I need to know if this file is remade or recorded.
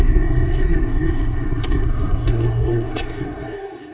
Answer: remade